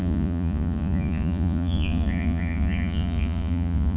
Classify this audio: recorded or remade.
remade